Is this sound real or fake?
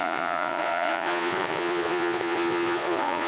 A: fake